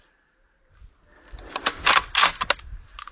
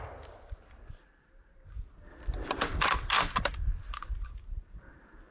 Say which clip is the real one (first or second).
first